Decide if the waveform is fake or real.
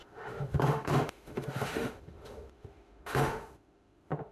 fake